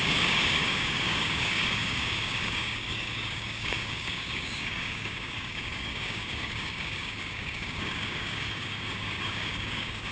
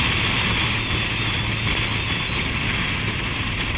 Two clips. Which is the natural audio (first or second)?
second